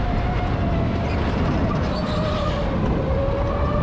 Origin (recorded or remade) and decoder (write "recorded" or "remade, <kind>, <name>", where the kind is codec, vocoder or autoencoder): recorded